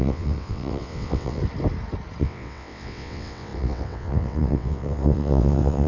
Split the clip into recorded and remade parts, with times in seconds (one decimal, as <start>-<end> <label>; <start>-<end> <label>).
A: 0.0-1.4 remade; 1.4-2.2 recorded; 2.2-5.9 remade